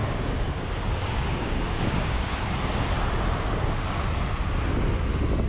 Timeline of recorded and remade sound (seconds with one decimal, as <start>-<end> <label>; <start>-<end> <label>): 0.0-2.3 remade; 2.3-5.5 recorded